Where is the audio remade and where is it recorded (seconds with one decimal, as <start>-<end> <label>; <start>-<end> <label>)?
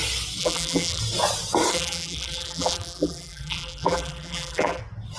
0.0-0.4 recorded; 0.4-1.0 remade; 1.0-1.7 recorded; 1.7-4.8 remade; 4.8-5.2 recorded